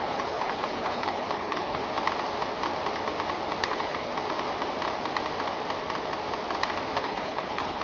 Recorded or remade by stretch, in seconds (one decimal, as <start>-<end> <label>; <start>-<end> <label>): 0.0-1.8 remade; 1.8-3.6 recorded; 3.6-4.1 remade; 4.1-7.0 recorded; 7.0-7.8 remade